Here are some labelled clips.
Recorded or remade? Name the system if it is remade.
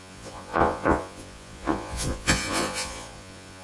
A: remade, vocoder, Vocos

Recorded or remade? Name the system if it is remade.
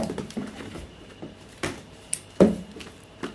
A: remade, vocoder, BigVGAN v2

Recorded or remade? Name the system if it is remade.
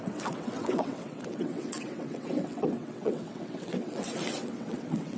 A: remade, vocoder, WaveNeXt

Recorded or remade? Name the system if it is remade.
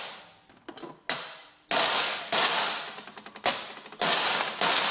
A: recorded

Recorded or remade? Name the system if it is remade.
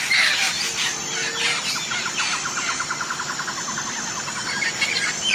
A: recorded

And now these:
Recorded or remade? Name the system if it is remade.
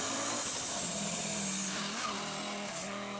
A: recorded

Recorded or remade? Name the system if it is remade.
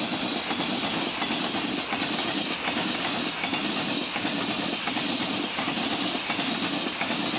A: recorded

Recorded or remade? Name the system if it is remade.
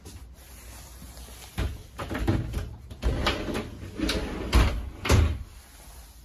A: recorded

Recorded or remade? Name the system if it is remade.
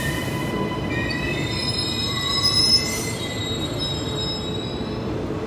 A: recorded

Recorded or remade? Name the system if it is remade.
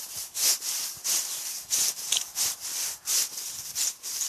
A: recorded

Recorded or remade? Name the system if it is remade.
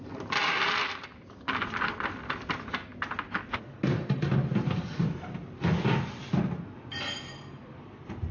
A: recorded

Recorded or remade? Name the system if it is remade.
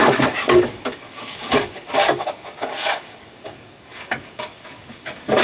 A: remade, codec, DAC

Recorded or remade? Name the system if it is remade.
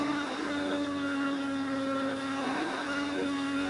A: remade, codec, SNAC